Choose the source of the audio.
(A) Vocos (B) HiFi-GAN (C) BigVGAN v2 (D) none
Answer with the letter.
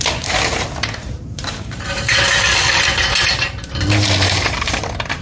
C